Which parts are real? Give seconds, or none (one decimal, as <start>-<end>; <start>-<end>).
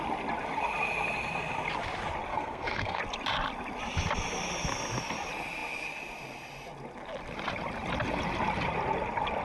0.0-2.3; 3.0-9.4